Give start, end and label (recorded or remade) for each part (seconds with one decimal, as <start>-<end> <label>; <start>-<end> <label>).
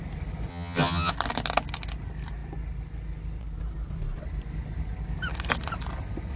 0.0-0.5 recorded; 0.5-1.1 remade; 1.1-6.4 recorded